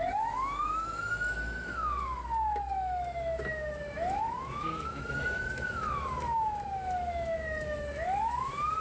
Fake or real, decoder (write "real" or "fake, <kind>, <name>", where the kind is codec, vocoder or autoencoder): fake, autoencoder, DAC-VAE